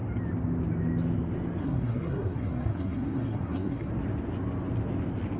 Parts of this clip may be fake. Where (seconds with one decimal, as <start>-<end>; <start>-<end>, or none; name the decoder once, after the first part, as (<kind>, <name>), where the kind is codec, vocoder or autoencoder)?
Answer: 1.6-3.9 (codec, SNAC)